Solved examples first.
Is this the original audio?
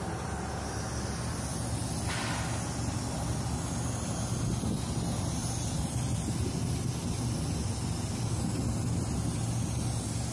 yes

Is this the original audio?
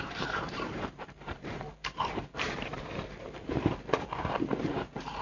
no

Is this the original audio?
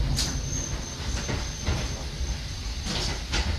yes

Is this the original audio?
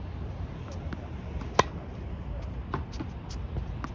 yes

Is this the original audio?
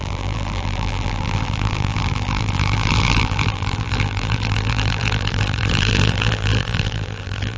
no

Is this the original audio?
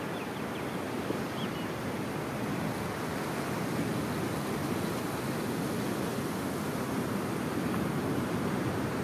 yes